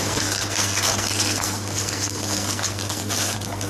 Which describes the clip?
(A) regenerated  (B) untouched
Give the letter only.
A